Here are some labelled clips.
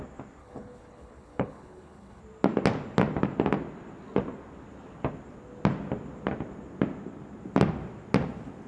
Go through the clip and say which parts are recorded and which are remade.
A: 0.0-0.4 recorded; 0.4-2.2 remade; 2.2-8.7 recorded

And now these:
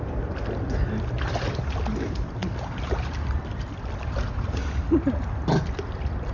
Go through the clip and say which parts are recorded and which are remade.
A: 0.0-6.3 recorded

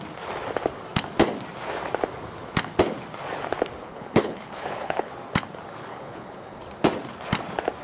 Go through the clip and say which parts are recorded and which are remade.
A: 0.0-3.8 recorded; 3.8-5.1 remade; 5.1-5.9 recorded; 5.9-6.6 remade; 6.6-7.8 recorded

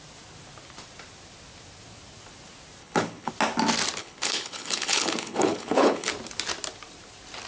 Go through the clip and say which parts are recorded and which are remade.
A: 0.0-2.8 recorded; 2.8-3.3 remade; 3.3-4.0 recorded; 4.0-6.1 remade; 6.1-7.5 recorded

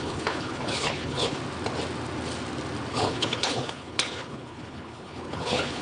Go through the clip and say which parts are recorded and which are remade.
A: 0.0-1.4 remade; 1.4-2.9 recorded; 2.9-5.8 remade

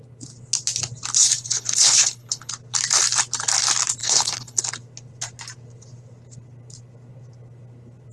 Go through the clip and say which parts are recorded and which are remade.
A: 0.0-1.2 recorded; 1.2-2.5 remade; 2.5-4.0 recorded; 4.0-4.6 remade; 4.6-8.1 recorded